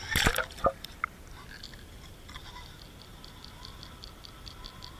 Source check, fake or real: real